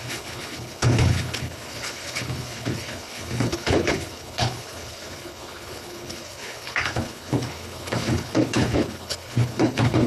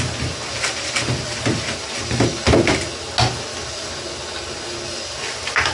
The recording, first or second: second